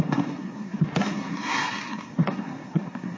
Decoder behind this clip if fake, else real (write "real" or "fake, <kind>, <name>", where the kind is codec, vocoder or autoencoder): fake, codec, SNAC